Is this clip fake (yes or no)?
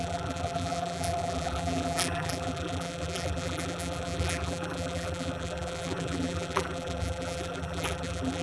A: yes